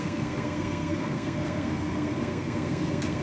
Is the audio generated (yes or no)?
yes